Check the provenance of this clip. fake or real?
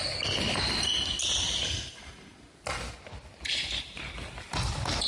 real